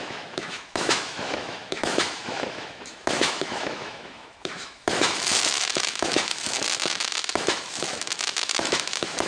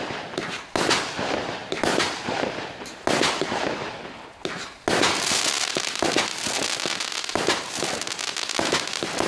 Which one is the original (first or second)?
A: second